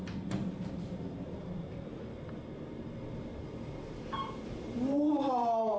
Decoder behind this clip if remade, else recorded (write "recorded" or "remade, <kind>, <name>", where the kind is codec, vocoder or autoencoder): remade, vocoder, BigVGAN v2